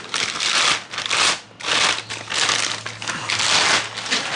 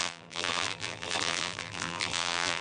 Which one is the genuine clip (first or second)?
first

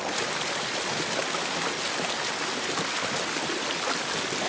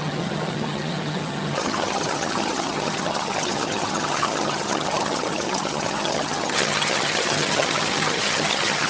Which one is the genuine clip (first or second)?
first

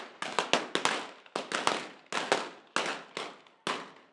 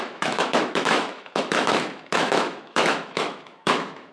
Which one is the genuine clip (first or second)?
first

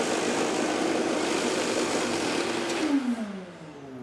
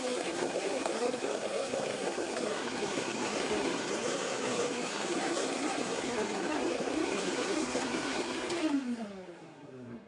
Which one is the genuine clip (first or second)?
first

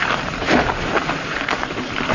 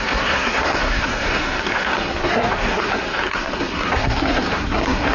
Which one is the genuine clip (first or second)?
first